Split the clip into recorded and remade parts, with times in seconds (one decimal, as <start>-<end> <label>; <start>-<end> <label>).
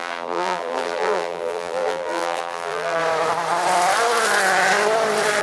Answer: 0.0-3.0 remade; 3.0-5.4 recorded